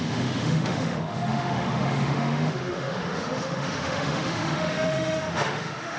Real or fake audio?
fake